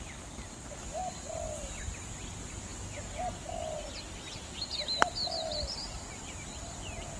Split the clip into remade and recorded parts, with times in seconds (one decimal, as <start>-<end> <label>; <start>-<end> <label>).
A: 0.0-7.2 recorded